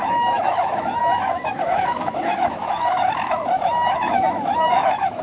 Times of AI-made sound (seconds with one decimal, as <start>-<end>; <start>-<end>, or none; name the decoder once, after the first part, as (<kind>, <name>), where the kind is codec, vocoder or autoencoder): 0.0-5.2 (autoencoder, DAC-VAE)